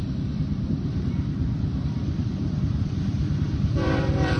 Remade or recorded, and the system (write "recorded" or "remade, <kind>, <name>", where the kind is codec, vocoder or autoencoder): remade, vocoder, BigVGAN v2